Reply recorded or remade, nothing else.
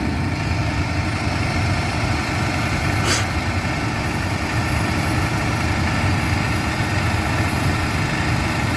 recorded